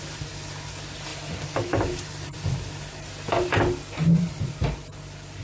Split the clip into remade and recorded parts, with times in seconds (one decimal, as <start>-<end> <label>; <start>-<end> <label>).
0.0-1.1 recorded; 1.1-2.9 remade; 2.9-5.4 recorded